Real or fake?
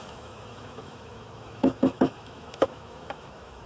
fake